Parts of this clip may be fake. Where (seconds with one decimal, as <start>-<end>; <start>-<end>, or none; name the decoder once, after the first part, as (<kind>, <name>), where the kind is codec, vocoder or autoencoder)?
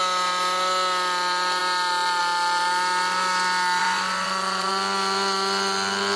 3.8-4.7 (vocoder, Vocos)